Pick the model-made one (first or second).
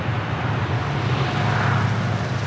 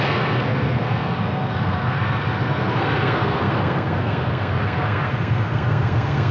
second